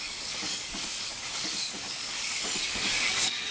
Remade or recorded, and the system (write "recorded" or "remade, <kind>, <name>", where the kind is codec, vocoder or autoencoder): remade, codec, DAC